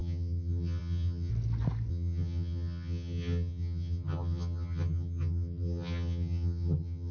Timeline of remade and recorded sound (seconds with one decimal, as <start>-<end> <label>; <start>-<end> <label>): 0.0-1.3 remade; 1.3-1.9 recorded; 1.9-7.1 remade

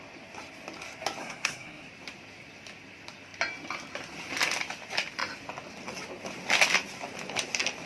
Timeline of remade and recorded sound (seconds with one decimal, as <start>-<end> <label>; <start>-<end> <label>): 0.0-1.2 recorded; 1.2-1.9 remade; 1.9-7.9 recorded

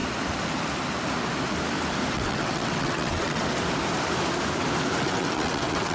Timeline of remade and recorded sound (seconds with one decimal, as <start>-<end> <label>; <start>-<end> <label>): 0.0-2.1 recorded; 2.1-3.4 remade; 3.4-5.0 recorded; 5.0-5.9 remade

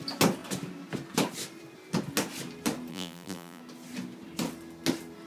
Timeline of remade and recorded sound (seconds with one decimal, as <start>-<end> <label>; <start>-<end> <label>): 0.0-2.9 recorded; 2.9-3.6 remade; 3.6-5.3 recorded

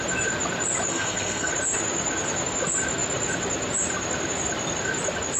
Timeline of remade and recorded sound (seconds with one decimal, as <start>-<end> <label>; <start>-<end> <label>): 0.0-0.9 recorded; 0.9-1.5 remade; 1.5-5.4 recorded

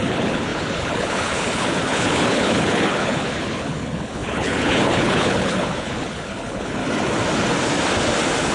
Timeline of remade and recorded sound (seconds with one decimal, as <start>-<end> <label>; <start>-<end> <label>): 0.0-6.8 remade; 6.8-8.5 recorded

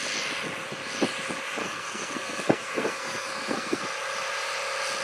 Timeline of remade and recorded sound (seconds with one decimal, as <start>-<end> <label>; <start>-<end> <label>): 0.0-1.6 recorded; 1.6-3.8 remade; 3.8-5.0 recorded

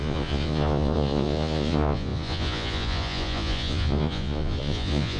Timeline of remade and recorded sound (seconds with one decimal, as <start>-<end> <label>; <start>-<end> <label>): 0.0-5.2 remade